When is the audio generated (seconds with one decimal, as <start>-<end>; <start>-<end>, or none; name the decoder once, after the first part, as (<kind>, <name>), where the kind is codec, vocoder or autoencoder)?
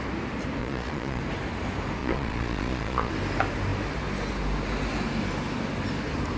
0.6-1.2 (vocoder, Vocos); 2.0-3.1